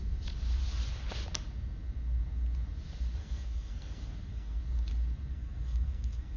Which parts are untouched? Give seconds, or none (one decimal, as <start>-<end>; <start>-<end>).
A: 0.0-3.2; 4.6-5.3